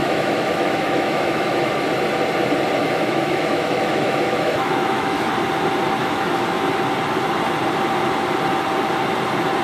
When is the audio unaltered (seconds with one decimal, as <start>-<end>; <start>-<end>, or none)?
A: 1.7-2.8; 5.3-6.0; 6.7-9.6